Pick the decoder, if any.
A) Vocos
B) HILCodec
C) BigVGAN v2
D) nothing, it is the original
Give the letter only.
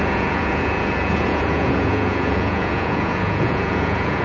A